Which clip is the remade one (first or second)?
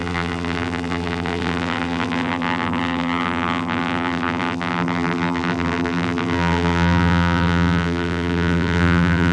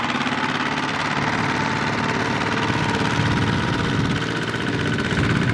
first